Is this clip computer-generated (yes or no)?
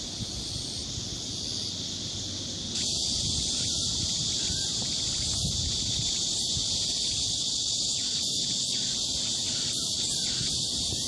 no